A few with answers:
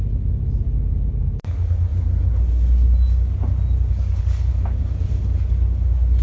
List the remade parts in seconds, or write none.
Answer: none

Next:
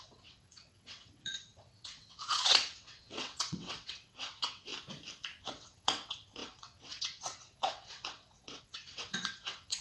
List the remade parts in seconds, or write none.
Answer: 0.0-4.7 (vocoder, WaveNeXt); 5.4-9.8

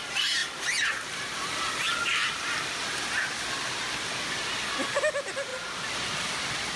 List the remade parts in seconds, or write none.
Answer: none

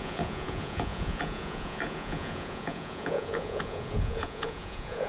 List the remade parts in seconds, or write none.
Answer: 0.0-5.1 (vocoder, Vocos)

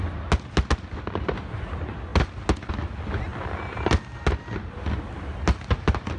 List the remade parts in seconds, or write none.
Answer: none

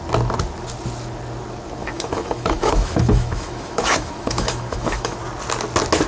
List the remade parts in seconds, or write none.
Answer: 1.8-5.2 (autoencoder, DAC-VAE)